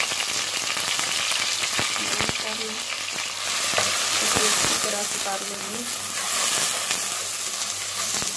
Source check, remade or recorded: recorded